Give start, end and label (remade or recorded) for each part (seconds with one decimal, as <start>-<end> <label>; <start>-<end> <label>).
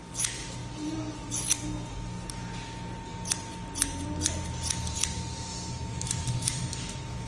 0.0-5.5 recorded; 5.5-7.3 remade